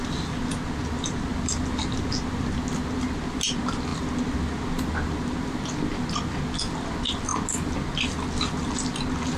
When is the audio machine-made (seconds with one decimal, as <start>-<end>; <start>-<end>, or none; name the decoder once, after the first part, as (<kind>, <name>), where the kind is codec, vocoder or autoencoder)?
none